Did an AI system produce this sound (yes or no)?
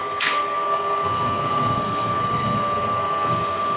yes